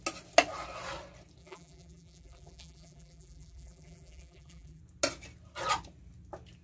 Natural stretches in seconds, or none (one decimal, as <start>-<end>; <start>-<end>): 0.0-1.4; 4.8-6.6